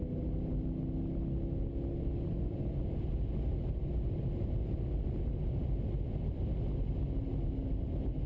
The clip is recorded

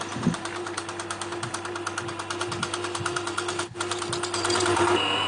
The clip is recorded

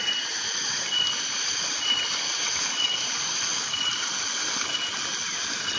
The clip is recorded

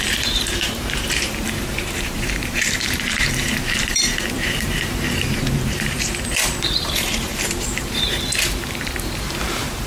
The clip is remade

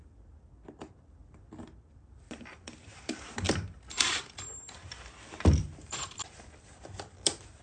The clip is remade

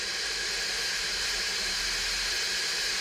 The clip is recorded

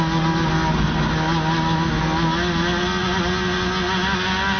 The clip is recorded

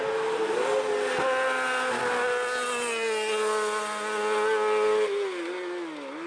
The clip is recorded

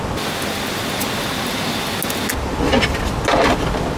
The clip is recorded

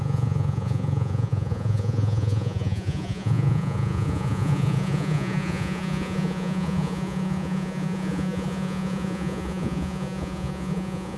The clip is remade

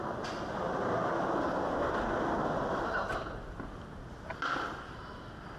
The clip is recorded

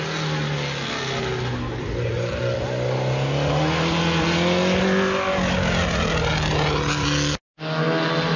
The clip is recorded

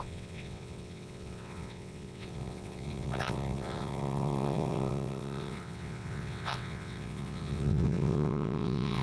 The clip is remade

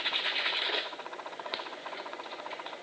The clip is remade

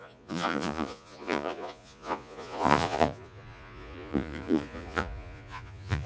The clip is remade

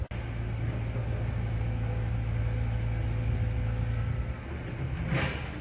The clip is recorded